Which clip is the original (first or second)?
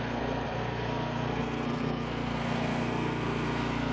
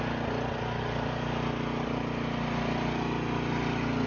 second